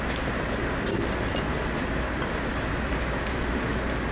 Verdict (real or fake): real